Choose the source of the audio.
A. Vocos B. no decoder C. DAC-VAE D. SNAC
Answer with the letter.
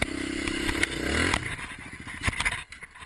B